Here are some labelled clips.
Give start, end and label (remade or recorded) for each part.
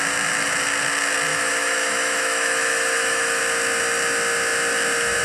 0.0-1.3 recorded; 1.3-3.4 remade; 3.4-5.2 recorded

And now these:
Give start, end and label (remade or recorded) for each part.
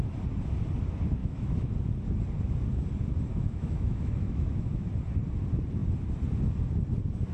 0.0-1.2 recorded; 1.2-1.7 remade; 1.7-3.3 recorded; 3.3-4.9 remade; 4.9-7.3 recorded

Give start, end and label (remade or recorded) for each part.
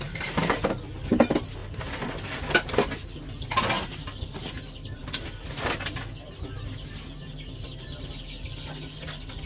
0.0-9.5 recorded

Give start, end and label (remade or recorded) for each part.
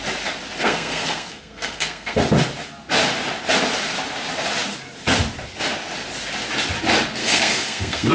0.0-0.6 recorded; 0.6-2.2 remade; 2.2-7.2 recorded; 7.2-8.1 remade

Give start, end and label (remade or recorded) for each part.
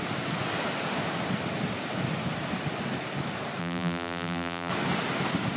0.0-3.6 recorded; 3.6-4.7 remade; 4.7-5.6 recorded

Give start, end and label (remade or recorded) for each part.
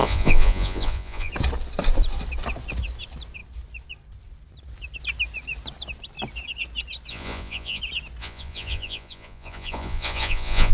0.0-1.3 remade; 1.3-7.1 recorded; 7.1-7.8 remade; 7.8-8.2 recorded; 8.2-10.7 remade